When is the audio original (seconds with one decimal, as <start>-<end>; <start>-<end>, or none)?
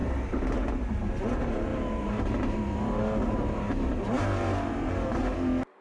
0.0-1.7; 5.2-5.8